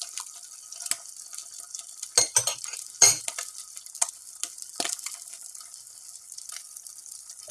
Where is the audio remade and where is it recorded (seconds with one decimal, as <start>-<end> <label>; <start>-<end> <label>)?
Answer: 0.0-7.5 recorded